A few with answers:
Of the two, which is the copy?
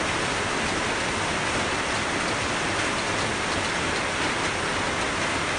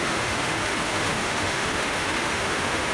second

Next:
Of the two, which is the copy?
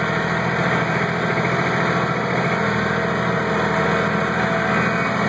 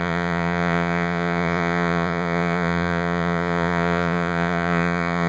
second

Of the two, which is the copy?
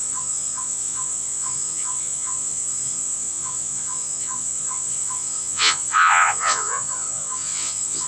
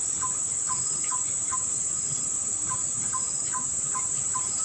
first